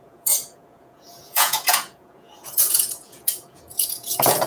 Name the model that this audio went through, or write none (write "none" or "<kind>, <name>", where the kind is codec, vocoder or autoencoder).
vocoder, Vocos